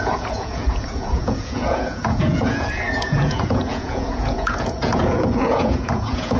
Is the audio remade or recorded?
remade